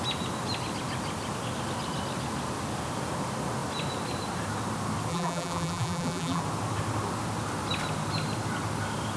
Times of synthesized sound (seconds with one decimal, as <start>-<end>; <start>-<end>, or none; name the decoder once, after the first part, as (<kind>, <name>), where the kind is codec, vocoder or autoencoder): 5.1-6.4 (vocoder, BigVGAN v2)